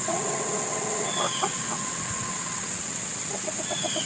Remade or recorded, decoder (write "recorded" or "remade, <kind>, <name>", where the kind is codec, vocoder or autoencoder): remade, vocoder, WaveNeXt